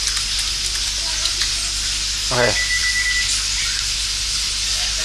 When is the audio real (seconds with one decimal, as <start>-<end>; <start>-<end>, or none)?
0.0-5.0